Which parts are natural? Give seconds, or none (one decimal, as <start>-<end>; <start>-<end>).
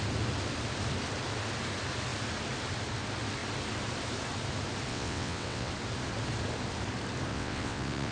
0.0-4.9; 5.7-7.3